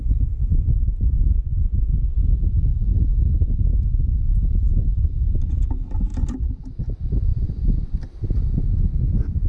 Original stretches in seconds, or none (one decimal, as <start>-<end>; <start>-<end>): 0.0-9.5